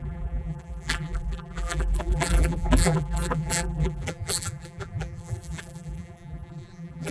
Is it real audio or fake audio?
fake